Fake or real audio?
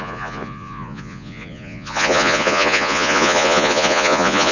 fake